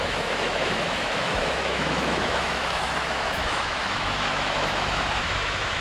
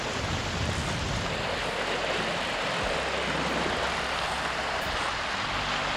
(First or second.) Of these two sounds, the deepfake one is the first